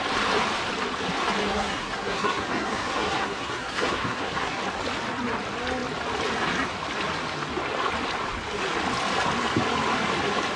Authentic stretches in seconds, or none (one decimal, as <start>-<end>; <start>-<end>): 0.0-1.4; 4.6-10.6